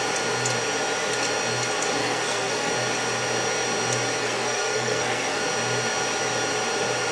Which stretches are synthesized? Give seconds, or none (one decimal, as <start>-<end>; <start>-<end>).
2.0-2.7; 4.2-5.4